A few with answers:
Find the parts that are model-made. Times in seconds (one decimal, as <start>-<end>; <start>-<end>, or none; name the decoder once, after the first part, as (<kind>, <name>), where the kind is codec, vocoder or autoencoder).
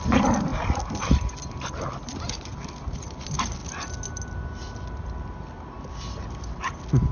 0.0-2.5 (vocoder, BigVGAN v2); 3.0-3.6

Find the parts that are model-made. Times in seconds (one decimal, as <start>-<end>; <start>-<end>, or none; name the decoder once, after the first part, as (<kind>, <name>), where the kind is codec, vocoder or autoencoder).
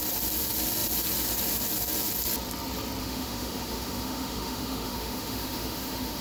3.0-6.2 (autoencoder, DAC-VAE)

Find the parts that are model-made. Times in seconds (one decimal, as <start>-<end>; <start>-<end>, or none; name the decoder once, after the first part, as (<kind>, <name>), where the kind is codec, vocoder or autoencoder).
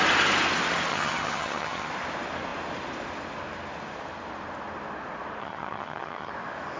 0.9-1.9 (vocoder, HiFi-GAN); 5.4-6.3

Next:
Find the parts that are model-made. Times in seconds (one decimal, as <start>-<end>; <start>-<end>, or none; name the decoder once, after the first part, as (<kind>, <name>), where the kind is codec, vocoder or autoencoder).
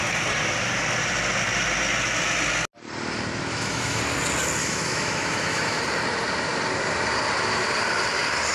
3.5-4.0 (autoencoder, DAC-VAE); 4.6-5.8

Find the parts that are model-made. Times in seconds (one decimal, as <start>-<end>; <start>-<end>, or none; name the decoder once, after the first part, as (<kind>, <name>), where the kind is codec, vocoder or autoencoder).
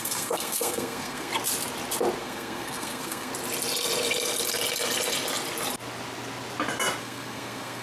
0.0-1.3 (codec, SNAC); 2.2-3.3; 7.0-7.8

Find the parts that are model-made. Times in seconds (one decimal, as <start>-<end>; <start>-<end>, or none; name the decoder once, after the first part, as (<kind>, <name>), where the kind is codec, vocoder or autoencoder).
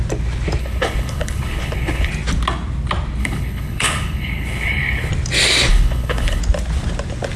0.6-2.1 (codec, HILCodec); 3.2-5.1; 5.7-6.4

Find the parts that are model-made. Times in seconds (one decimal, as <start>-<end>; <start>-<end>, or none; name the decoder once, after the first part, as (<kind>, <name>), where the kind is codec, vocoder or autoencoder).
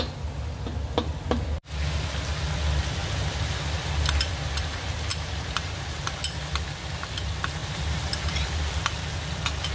5.1-6.0 (vocoder, BigVGAN v2); 7.6-8.7